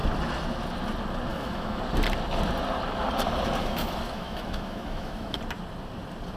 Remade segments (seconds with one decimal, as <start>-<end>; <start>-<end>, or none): 1.3-1.8; 3.6-5.4